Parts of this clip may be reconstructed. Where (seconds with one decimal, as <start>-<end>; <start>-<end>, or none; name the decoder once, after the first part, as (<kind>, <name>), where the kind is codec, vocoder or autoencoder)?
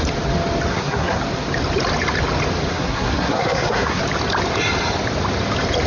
0.7-1.2 (codec, SNAC); 2.7-4.0